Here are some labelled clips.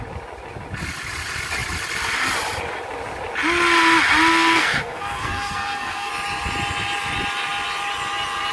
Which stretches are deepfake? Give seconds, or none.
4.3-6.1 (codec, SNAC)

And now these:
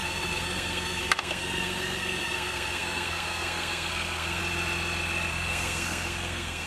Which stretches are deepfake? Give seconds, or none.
0.0-4.4 (codec, SNAC); 5.3-6.7

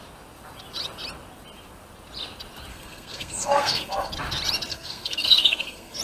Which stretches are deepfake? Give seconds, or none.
2.7-4.1 (codec, SNAC); 4.7-6.0